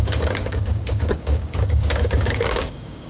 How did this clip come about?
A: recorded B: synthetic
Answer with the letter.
B